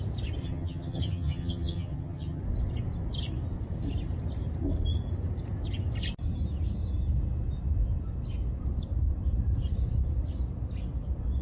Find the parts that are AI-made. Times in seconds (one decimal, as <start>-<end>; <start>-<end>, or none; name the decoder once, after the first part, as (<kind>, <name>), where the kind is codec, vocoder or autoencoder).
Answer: 0.4-2.4 (vocoder, HiFi-GAN)